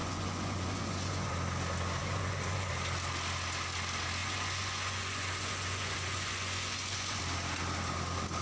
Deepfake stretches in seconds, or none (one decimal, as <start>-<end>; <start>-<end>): 0.0-1.3; 2.0-2.7; 4.2-7.2